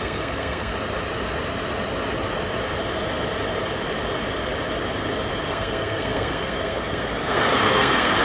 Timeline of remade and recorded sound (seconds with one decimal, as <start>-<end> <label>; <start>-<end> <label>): 0.0-0.7 remade; 0.7-5.5 recorded; 5.5-8.2 remade